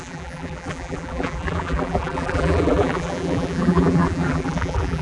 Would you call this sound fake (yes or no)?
yes